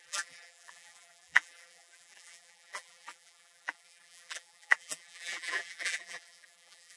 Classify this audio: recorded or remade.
remade